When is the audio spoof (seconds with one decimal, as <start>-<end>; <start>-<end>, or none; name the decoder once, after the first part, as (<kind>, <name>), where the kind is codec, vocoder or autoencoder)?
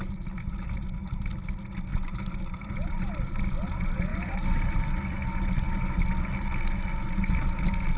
4.1-4.9 (vocoder, BigVGAN v2)